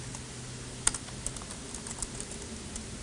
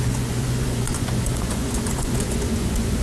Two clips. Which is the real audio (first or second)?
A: first